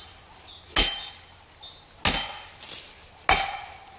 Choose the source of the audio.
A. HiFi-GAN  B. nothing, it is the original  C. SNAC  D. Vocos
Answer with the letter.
B